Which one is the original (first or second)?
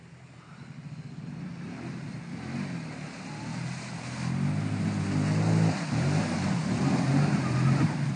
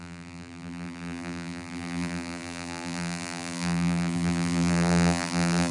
first